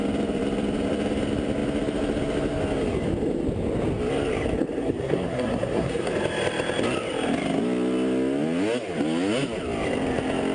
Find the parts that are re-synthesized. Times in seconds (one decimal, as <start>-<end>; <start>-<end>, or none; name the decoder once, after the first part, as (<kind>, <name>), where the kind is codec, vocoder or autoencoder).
4.8-6.1 (codec, SNAC)